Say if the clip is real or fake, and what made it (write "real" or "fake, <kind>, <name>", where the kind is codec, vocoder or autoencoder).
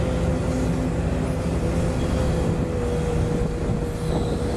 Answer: real